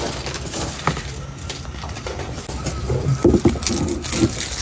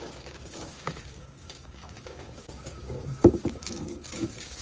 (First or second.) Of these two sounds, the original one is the first